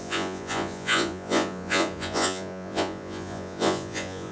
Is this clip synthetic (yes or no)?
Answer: yes